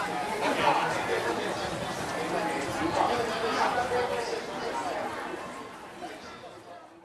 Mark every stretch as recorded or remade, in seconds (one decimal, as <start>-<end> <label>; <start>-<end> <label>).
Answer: 0.0-7.0 recorded